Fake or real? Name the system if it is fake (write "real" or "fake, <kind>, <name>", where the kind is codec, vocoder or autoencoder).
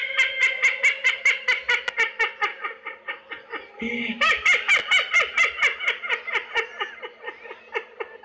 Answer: real